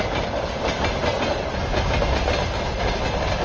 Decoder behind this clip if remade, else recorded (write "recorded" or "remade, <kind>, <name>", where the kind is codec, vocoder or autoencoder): recorded